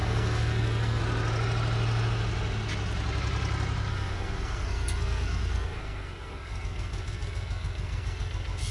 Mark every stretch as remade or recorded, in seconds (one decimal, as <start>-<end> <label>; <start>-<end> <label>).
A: 0.0-1.0 remade; 1.0-3.9 recorded; 3.9-8.7 remade